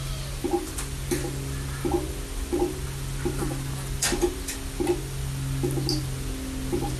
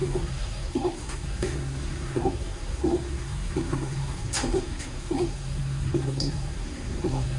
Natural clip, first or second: first